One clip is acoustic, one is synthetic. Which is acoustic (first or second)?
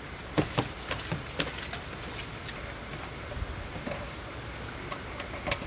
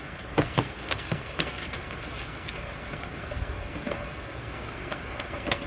first